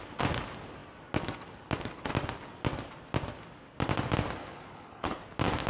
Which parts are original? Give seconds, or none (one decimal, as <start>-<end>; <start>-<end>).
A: 0.0-4.4; 5.2-5.7